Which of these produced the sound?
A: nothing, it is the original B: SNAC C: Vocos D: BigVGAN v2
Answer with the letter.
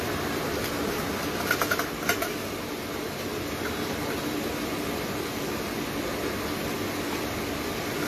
A